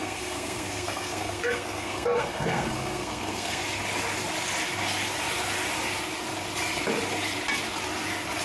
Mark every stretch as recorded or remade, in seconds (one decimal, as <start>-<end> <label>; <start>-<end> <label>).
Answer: 0.0-3.6 remade; 3.6-8.4 recorded